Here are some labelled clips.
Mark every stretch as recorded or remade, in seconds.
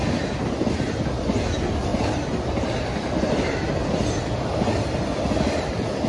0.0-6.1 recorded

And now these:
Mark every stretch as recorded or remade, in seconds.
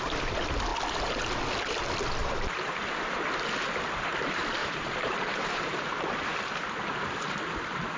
0.0-2.2 recorded; 2.2-2.8 remade; 2.8-4.6 recorded; 4.6-7.4 remade; 7.4-8.0 recorded